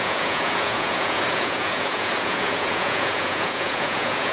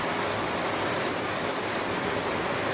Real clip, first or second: second